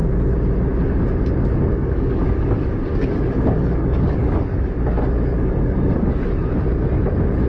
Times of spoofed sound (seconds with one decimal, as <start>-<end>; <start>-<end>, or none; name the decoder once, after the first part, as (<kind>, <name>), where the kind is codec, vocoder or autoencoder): 1.7-6.2 (codec, DAC)